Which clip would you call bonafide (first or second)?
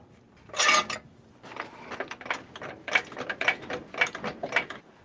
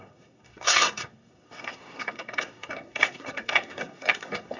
first